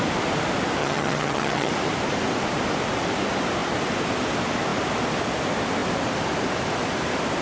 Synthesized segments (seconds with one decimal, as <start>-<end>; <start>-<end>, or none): 0.8-1.7